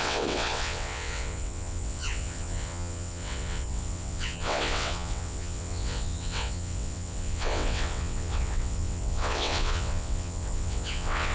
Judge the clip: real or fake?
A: fake